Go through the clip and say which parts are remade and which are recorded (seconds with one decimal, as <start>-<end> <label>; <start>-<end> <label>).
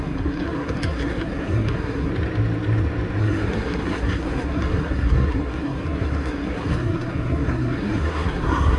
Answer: 0.0-2.1 remade; 2.1-3.2 recorded; 3.2-8.8 remade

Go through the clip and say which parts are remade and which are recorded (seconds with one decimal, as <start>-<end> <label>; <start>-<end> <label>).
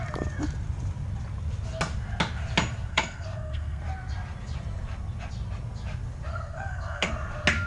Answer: 0.0-2.9 recorded; 2.9-3.8 remade; 3.8-6.3 recorded; 6.3-7.1 remade; 7.1-7.7 recorded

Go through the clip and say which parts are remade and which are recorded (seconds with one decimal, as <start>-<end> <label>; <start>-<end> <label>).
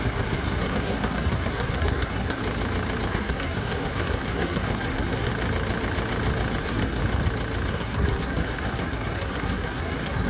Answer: 0.0-2.4 remade; 2.4-3.1 recorded; 3.1-5.3 remade; 5.3-6.6 recorded; 6.6-7.0 remade; 7.0-7.7 recorded; 7.7-10.3 remade